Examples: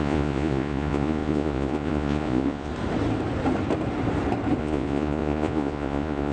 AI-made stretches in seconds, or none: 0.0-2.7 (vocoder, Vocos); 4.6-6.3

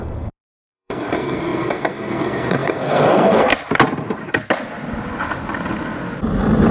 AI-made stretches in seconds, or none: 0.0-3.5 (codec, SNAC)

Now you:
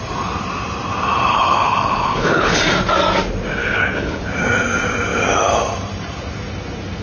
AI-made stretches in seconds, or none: 1.3-2.6 (codec, HILCodec); 3.6-4.2